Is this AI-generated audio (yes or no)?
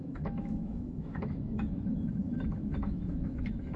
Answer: yes